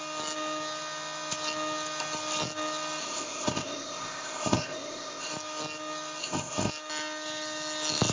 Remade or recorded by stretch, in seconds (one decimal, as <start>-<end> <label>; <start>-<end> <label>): 0.0-3.0 recorded; 3.0-5.3 remade; 5.3-6.2 recorded; 6.2-6.7 remade; 6.7-8.1 recorded